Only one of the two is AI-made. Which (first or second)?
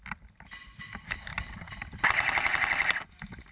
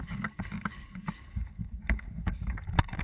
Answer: second